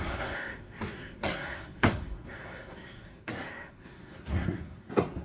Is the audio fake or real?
fake